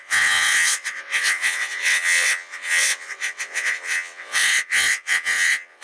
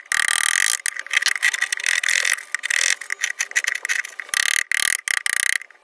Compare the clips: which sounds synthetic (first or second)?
first